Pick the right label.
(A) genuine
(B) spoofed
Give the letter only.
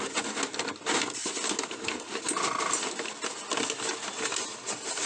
A